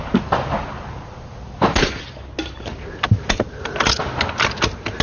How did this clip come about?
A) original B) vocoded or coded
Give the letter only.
A